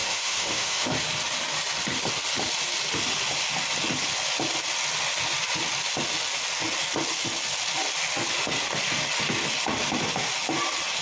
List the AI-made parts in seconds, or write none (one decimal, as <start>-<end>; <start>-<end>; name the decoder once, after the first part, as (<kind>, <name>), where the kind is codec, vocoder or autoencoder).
0.0-0.9 (autoencoder, DAC-VAE)